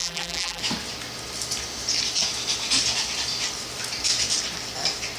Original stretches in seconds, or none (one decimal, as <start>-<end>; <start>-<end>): 0.6-5.2